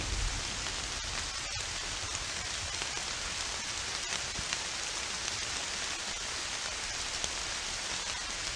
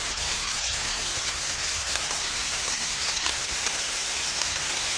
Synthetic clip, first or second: second